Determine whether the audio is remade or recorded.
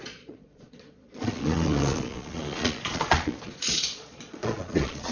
remade